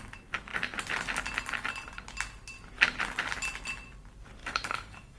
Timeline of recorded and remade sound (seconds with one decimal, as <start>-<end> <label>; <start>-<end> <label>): 0.0-4.4 recorded; 4.4-5.2 remade